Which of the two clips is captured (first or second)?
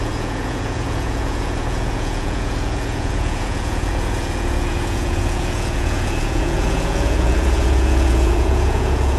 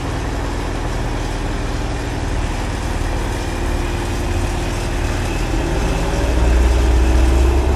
second